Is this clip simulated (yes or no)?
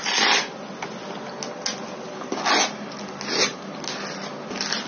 no